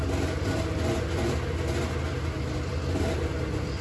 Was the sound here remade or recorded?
recorded